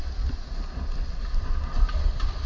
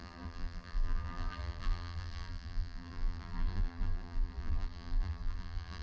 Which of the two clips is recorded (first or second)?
first